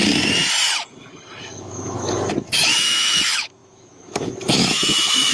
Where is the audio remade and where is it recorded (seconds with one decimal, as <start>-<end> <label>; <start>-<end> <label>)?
0.0-1.4 recorded; 1.4-5.3 remade